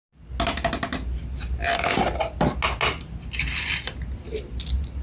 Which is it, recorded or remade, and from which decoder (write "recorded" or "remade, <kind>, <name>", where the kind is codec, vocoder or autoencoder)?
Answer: recorded